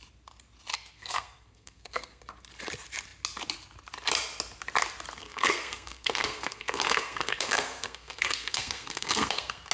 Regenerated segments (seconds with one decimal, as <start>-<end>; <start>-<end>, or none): 0.7-2.2; 5.2-9.7